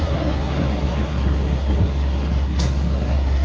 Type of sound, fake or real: fake